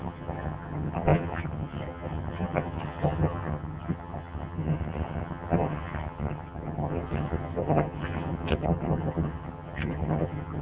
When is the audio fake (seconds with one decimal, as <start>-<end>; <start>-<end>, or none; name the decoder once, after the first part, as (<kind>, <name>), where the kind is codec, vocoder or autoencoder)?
0.0-10.6 (vocoder, HiFi-GAN)